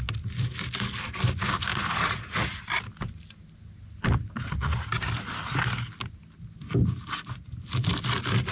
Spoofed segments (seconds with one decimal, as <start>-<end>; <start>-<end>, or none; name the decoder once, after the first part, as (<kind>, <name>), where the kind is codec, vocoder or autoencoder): 1.7-2.6 (vocoder, Vocos)